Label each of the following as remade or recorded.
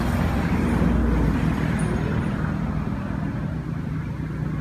recorded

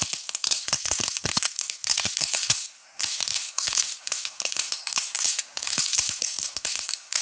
remade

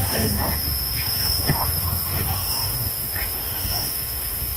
remade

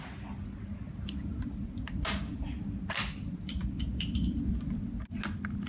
recorded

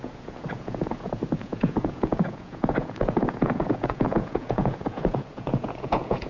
remade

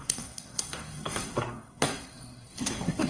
remade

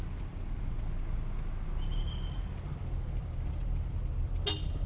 recorded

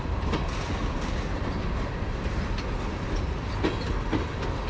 recorded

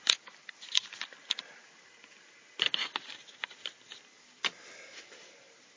recorded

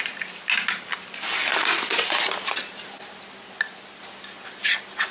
recorded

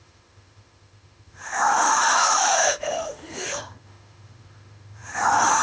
remade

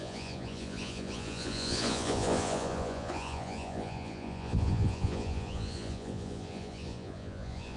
remade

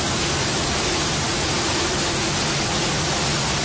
recorded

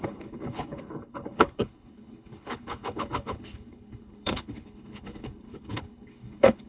remade